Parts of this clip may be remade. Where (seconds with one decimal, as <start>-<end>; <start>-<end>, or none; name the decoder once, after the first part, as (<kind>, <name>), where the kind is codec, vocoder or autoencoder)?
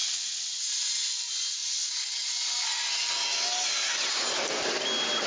0.0-0.6 (vocoder, WaveNeXt)